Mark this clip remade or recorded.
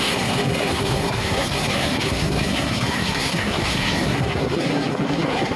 remade